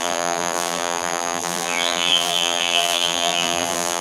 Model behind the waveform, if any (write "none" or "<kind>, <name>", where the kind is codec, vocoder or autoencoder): vocoder, BigVGAN v2